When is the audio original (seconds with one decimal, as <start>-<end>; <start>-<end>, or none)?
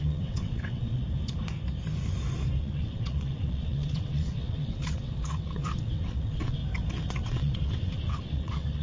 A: 1.0-2.6; 6.6-7.1